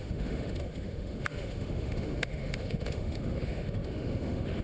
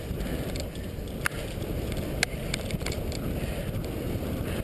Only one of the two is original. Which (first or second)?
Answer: second